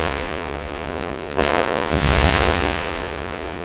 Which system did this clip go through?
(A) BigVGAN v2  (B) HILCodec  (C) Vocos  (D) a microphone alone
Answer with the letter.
C